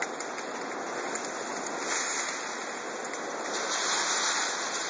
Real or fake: real